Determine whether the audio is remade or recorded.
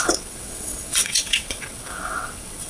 remade